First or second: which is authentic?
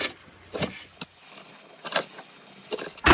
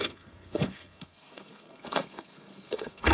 first